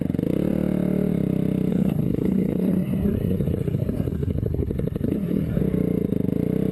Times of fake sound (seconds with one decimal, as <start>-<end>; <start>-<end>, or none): 1.7-5.6